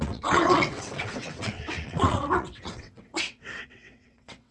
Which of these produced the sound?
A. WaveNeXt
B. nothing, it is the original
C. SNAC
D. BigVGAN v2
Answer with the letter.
A